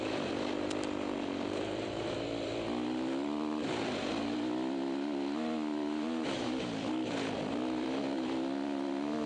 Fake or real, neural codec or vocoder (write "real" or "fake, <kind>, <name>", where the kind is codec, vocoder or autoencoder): fake, vocoder, BigVGAN v2